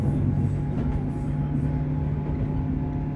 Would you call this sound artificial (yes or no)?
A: no